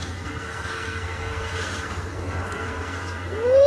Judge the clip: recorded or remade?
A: remade